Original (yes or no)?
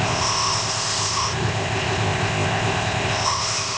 no